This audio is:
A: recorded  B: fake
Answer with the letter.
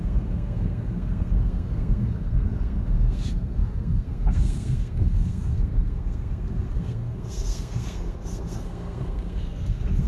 B